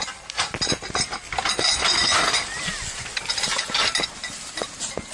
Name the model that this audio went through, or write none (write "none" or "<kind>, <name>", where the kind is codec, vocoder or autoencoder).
none